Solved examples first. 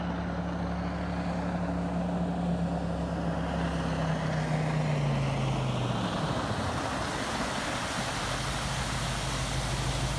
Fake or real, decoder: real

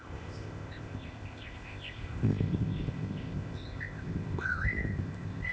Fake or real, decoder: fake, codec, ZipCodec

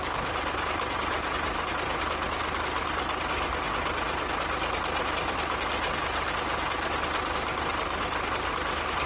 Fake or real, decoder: real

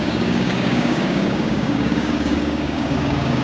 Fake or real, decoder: fake, codec, DAC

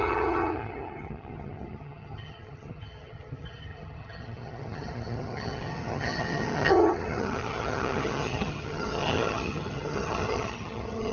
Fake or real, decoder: fake, vocoder, HiFi-GAN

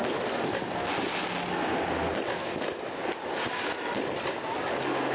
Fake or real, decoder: real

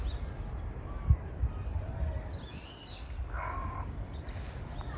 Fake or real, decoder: real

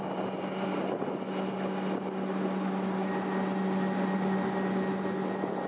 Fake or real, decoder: real